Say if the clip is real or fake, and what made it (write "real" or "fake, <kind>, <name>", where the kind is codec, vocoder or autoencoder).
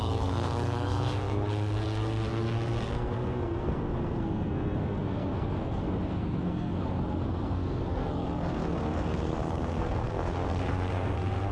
fake, codec, SNAC